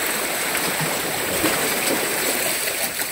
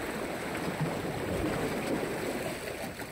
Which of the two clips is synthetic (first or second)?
first